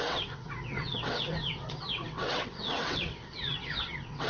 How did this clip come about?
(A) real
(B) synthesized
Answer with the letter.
B